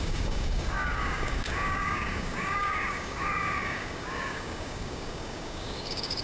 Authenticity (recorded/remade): remade